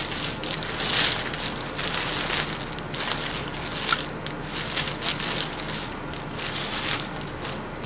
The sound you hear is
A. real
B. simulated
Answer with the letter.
A